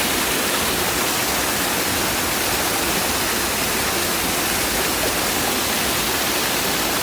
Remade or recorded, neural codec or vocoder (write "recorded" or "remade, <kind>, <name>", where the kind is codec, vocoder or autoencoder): recorded